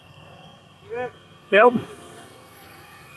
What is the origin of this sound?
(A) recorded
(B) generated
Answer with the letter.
B